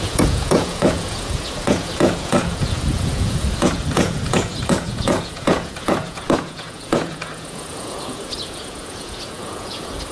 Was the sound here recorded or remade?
remade